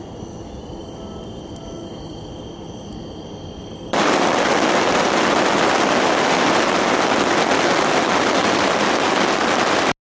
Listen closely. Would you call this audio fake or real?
real